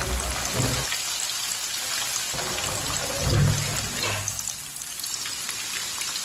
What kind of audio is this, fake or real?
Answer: real